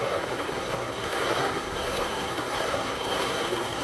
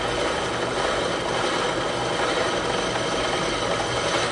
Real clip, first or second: second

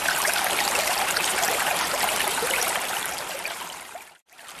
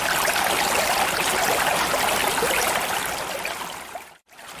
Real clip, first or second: second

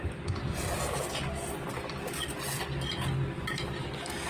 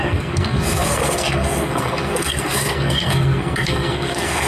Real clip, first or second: first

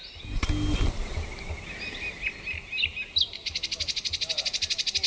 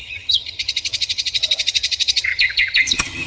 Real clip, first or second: first